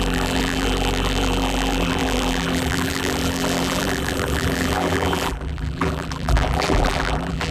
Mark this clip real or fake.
fake